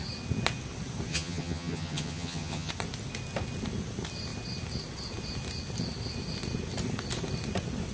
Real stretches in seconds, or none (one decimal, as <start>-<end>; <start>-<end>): 0.0-1.1; 2.7-7.9